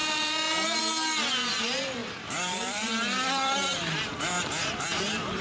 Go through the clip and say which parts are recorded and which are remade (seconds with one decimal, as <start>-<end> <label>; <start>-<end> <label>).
0.0-0.8 remade; 0.8-2.0 recorded; 2.0-5.4 remade